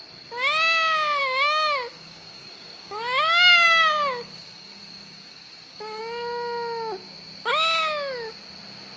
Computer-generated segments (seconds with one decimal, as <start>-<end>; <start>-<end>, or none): 1.2-6.0